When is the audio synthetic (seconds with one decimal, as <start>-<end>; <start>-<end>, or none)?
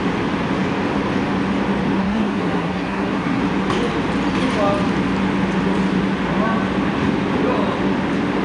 2.0-3.4